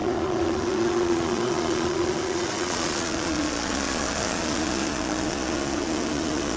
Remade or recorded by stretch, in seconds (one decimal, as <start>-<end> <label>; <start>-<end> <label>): 0.0-6.6 remade